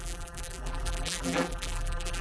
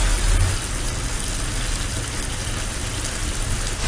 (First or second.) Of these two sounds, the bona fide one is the second